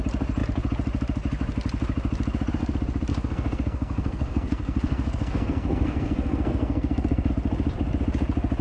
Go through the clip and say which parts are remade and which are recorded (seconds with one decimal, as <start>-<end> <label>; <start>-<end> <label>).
0.0-3.1 recorded; 3.1-7.3 remade; 7.3-8.6 recorded